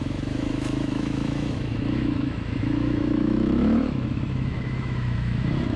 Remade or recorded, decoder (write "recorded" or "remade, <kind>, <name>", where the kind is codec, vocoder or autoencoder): remade, autoencoder, DAC-VAE